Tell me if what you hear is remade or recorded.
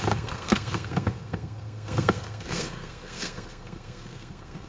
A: remade